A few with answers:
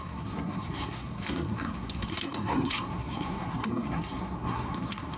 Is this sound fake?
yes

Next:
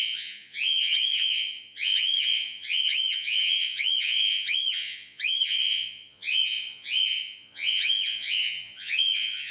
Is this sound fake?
yes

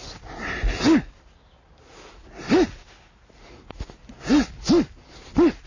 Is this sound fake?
no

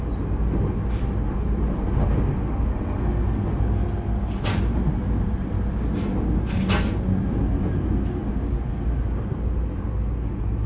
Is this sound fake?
no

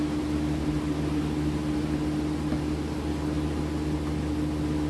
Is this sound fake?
no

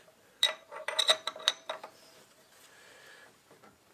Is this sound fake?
yes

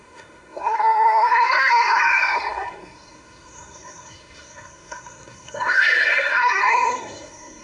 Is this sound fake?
yes